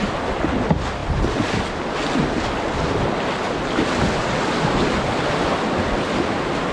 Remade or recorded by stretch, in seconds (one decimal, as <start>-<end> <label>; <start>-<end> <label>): 0.0-6.7 recorded